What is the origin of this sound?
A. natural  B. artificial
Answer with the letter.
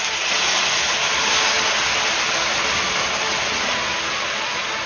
A